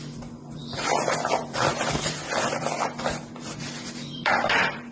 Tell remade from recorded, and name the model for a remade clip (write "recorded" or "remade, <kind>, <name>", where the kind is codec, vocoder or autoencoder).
remade, vocoder, BigVGAN v2